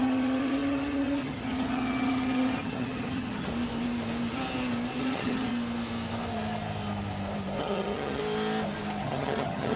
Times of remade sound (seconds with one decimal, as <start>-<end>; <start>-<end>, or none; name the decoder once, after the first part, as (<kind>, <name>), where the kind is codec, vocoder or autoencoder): 0.0-3.5 (vocoder, HiFi-GAN); 5.0-5.5; 7.6-8.2; 9.0-9.8